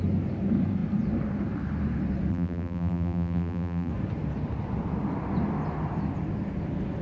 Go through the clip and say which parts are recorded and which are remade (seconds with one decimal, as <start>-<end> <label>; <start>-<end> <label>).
0.0-2.3 recorded; 2.3-3.9 remade; 3.9-7.0 recorded